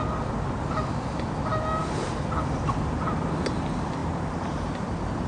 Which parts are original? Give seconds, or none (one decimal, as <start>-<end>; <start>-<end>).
0.0-1.8; 3.1-5.3